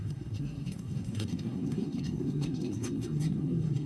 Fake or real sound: fake